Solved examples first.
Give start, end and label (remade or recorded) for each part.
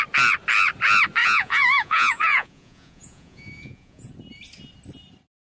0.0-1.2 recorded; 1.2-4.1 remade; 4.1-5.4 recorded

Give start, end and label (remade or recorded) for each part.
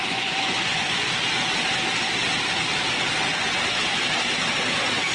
0.0-1.1 remade; 1.1-5.1 recorded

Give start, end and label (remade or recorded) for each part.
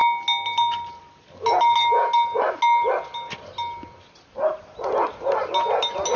0.0-6.2 recorded